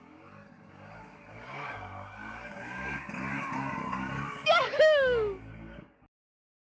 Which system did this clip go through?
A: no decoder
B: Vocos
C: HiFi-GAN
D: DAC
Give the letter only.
D